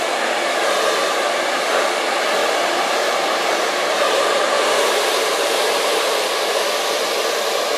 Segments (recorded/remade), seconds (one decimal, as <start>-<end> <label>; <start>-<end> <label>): 0.0-1.0 recorded; 1.0-1.7 remade; 1.7-2.4 recorded; 2.4-6.6 remade; 6.6-7.8 recorded